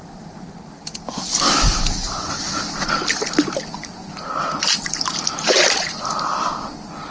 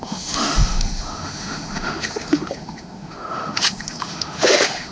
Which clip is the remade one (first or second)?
second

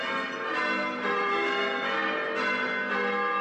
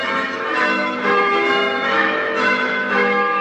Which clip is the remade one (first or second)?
second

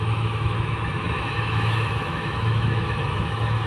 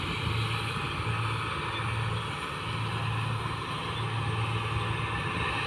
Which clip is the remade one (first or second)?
first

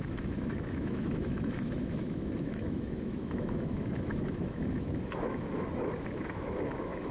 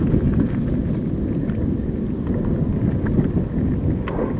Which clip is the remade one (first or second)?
first